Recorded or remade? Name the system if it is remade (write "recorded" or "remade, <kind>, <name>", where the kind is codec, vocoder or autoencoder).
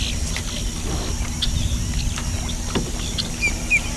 recorded